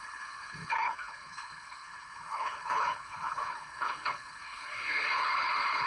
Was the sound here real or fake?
fake